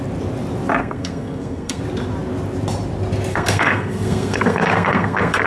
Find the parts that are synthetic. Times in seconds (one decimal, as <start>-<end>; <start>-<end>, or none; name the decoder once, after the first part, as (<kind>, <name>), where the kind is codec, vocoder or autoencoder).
0.8-1.8 (codec, SNAC); 3.3-5.5